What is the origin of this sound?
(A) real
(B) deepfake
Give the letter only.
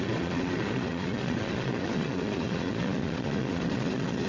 B